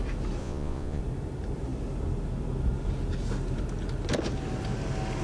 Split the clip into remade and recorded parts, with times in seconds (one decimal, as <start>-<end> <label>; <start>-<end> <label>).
0.0-0.4 recorded; 0.4-1.0 remade; 1.0-5.2 recorded